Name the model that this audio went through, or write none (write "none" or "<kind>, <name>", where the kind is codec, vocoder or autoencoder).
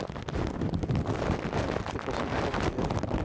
none